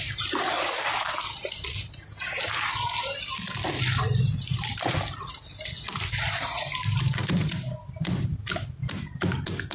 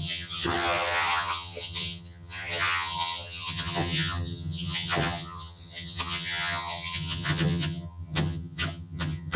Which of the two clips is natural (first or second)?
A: first